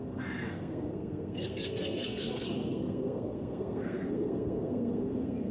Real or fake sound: fake